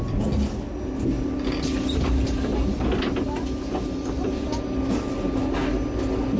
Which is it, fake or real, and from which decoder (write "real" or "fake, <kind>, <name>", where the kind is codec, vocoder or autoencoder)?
real